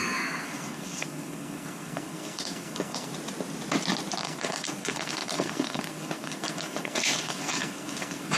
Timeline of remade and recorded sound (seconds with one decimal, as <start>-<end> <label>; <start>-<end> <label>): 0.0-3.1 remade; 3.1-4.2 recorded; 4.2-8.4 remade